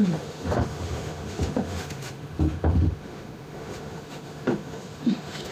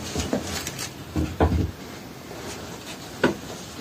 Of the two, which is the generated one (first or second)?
first